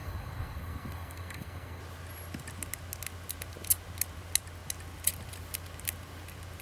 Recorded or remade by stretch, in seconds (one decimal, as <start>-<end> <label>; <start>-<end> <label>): 0.0-1.8 remade; 1.8-6.6 recorded